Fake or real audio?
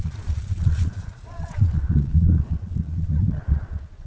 fake